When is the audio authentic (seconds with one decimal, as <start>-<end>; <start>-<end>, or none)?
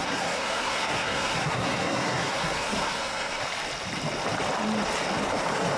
3.4-5.8